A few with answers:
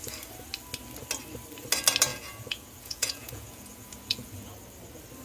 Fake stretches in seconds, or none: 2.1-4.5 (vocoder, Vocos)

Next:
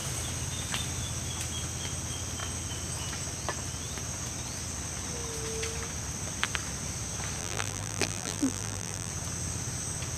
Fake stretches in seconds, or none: 7.4-9.1 (vocoder, BigVGAN v2)